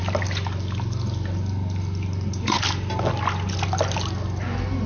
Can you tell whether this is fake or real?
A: real